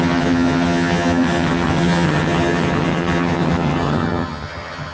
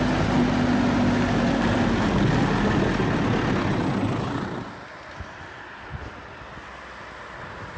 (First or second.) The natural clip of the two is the second